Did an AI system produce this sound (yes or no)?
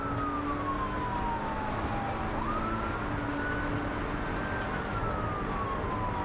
no